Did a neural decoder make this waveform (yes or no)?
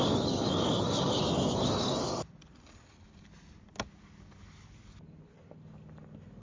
no